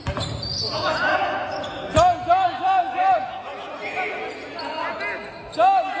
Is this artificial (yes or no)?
no